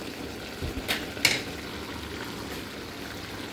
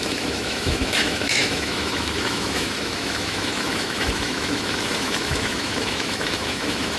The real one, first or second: first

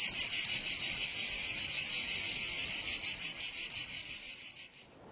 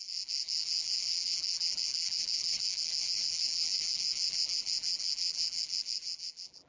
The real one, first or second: first